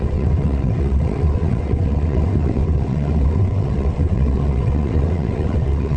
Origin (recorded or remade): remade